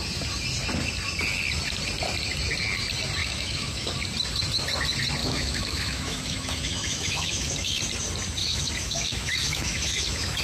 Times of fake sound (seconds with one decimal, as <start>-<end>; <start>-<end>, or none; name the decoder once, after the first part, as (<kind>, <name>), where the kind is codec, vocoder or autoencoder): 3.2-3.9 (autoencoder, DAC-VAE); 5.2-7.8; 8.4-10.4